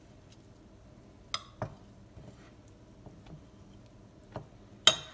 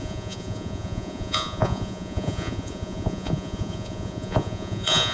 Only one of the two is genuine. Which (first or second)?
first